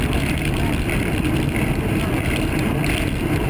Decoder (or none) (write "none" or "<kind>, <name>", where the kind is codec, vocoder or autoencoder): none